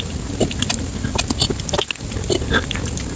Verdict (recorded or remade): recorded